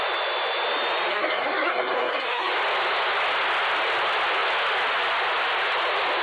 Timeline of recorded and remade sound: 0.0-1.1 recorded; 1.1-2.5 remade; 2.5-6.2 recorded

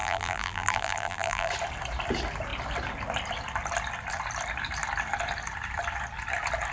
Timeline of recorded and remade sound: 0.0-1.5 remade; 1.5-6.7 recorded